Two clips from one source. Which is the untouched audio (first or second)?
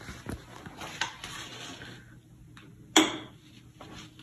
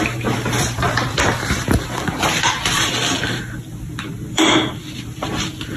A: first